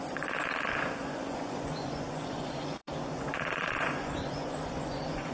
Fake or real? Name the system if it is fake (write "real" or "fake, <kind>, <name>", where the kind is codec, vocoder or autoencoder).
fake, vocoder, Vocos